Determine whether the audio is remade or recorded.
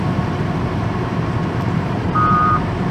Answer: remade